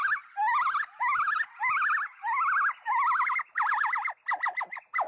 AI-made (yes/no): no